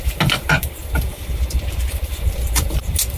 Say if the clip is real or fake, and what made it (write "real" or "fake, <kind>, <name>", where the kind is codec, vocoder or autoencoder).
fake, vocoder, BigVGAN v2